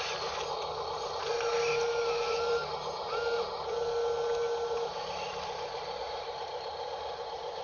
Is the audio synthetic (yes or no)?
no